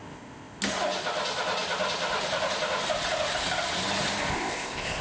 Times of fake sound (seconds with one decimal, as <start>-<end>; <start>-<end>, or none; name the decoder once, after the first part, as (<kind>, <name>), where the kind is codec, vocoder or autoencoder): 0.0-0.6 (codec, ZipCodec); 4.3-5.0